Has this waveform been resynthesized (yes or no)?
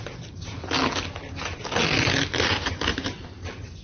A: no